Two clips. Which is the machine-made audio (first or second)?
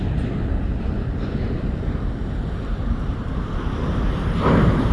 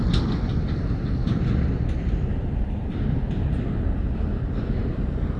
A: first